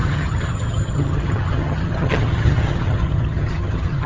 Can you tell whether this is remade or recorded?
remade